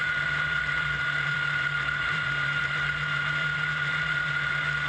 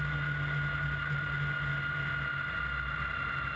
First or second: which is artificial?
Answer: first